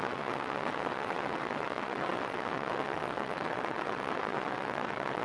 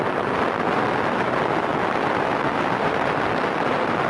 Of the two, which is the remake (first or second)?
first